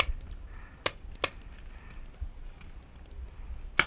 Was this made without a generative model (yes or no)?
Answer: yes